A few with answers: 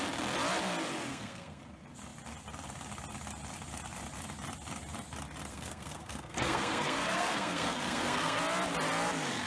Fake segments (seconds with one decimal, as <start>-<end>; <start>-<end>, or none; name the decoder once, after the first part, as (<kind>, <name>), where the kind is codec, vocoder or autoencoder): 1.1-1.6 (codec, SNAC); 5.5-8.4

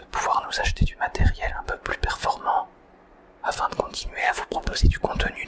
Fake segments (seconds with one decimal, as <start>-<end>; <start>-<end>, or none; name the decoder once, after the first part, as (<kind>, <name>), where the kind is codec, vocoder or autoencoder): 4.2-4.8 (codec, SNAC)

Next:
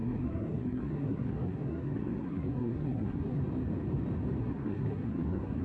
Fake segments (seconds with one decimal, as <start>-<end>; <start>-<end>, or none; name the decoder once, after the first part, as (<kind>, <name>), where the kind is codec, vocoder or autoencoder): 0.0-3.4 (codec, SNAC); 4.4-5.6

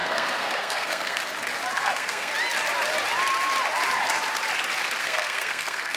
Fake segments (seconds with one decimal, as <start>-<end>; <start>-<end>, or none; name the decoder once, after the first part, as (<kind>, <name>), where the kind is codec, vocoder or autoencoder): 0.0-1.2 (codec, SNAC); 1.7-2.3; 5.0-6.0

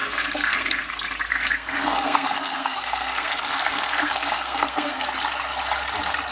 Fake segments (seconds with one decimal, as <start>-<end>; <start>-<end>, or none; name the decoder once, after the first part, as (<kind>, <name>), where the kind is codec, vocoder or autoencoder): 0.0-0.9 (codec, SNAC); 1.3-5.1

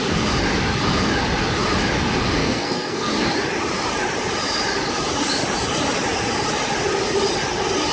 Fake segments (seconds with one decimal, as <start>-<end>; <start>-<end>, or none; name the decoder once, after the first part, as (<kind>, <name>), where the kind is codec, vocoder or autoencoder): 2.4-3.1 (codec, SNAC)

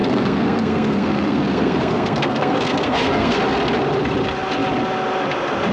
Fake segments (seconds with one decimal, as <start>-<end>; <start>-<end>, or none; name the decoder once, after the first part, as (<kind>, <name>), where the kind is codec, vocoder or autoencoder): 0.0-3.4 (codec, SNAC)

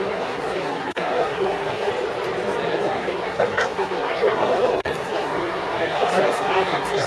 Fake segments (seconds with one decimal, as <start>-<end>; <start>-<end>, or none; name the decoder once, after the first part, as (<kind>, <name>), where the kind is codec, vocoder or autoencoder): 0.0-1.9 (codec, SNAC); 2.7-7.1